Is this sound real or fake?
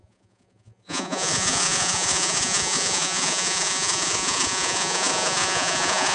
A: fake